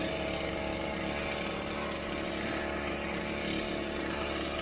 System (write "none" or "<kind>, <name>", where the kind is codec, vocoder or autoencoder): none